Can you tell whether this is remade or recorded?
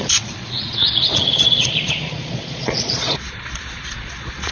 remade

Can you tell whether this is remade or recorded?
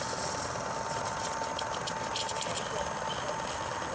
recorded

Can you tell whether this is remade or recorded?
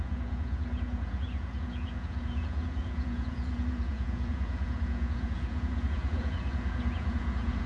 remade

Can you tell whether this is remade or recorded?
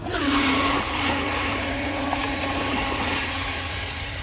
remade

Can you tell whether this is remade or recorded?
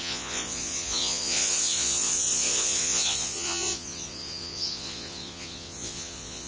remade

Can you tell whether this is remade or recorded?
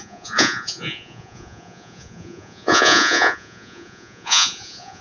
remade